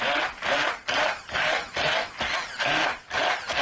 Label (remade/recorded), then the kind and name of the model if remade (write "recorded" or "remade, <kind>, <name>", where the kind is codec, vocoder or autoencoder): recorded